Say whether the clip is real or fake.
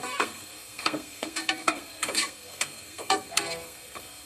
fake